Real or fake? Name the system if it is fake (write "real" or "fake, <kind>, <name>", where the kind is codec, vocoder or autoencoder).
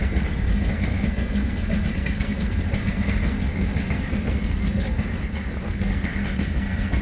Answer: fake, codec, SNAC